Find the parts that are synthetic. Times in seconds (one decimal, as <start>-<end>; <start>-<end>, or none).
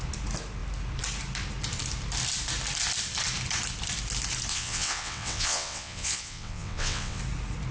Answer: 4.5-7.2